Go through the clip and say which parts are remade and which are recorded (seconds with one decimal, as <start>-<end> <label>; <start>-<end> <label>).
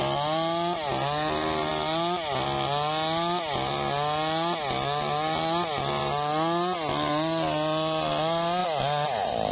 0.0-9.5 recorded